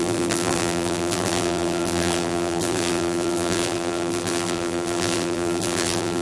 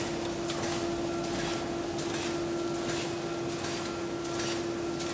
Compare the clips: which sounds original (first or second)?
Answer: second